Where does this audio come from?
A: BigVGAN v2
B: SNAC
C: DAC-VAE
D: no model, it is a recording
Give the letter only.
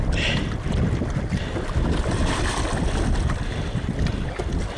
D